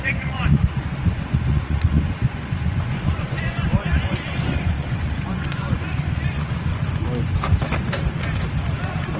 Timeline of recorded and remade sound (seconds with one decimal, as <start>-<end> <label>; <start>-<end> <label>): 0.0-6.7 remade; 6.7-9.2 recorded